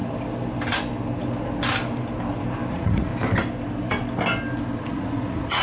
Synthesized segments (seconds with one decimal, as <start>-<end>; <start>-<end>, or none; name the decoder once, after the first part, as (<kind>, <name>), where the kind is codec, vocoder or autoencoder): 2.7-3.1 (vocoder, Vocos); 4.9-5.6